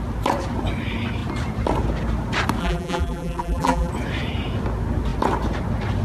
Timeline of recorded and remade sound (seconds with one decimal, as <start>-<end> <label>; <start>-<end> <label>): 0.0-2.6 recorded; 2.6-3.9 remade; 3.9-6.0 recorded